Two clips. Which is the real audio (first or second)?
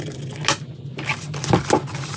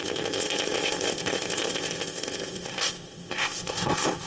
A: first